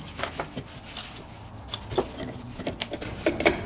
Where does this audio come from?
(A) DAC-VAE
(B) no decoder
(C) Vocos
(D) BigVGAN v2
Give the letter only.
B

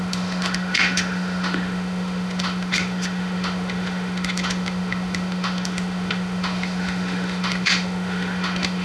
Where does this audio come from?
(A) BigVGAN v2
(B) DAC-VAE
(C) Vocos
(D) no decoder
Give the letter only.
B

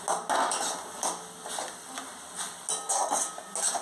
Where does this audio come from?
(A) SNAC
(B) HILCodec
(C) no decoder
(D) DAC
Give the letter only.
C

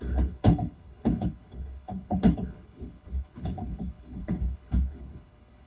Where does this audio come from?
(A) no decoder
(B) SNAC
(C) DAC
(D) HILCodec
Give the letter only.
D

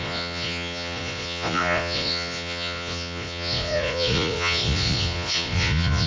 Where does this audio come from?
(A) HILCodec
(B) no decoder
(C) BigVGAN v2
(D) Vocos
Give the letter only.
D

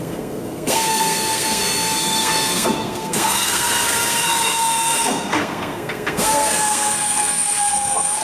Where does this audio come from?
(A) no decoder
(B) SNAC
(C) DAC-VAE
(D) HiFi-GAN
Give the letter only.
B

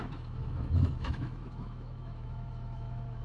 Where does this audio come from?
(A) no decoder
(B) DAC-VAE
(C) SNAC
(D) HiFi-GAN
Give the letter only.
B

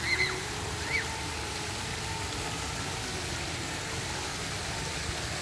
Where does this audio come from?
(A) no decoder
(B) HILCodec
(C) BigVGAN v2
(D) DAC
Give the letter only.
A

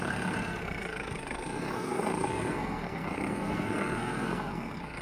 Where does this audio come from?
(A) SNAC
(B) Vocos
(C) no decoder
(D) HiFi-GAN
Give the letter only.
A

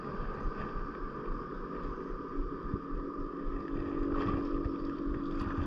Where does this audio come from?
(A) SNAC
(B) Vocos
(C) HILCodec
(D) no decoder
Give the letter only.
D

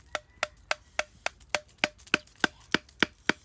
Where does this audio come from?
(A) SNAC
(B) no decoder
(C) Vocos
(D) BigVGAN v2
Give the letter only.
B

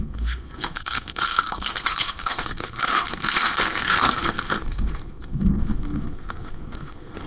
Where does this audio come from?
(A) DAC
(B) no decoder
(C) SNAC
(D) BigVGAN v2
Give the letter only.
C